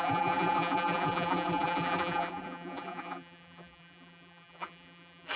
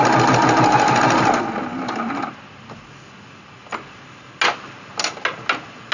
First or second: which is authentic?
second